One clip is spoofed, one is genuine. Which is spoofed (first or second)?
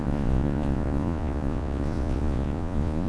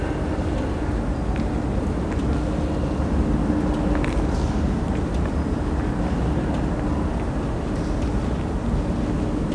first